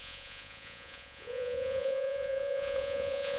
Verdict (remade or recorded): remade